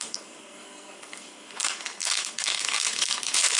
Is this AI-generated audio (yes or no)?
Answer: yes